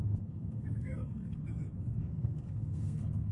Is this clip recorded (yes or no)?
no